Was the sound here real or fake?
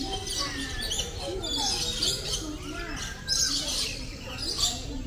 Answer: real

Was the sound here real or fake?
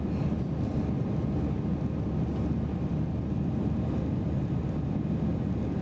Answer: real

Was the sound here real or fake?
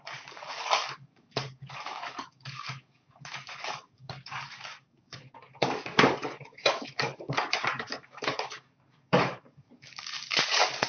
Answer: fake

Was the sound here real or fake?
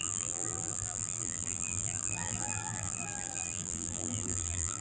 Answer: fake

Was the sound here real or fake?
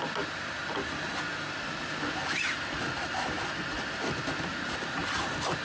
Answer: real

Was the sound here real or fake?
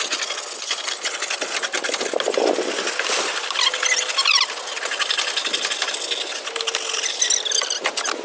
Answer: real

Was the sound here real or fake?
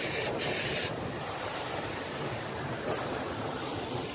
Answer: fake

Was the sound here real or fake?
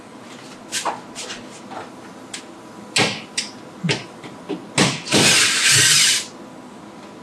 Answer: real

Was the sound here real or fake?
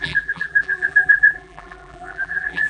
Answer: fake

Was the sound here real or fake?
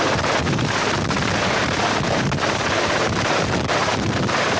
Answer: fake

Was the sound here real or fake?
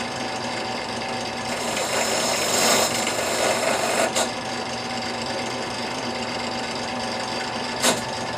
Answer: fake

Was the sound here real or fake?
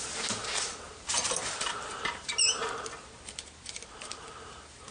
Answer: fake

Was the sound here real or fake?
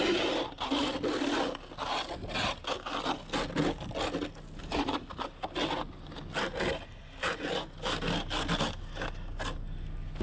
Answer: real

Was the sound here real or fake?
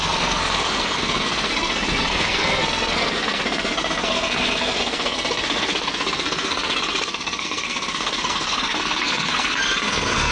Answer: fake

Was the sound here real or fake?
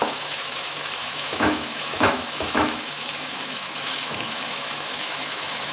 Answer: fake